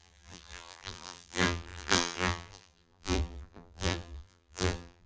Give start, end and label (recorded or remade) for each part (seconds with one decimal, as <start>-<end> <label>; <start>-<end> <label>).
0.0-5.1 remade